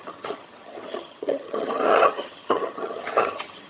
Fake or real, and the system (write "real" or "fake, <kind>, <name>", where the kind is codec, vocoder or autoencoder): fake, vocoder, HiFi-GAN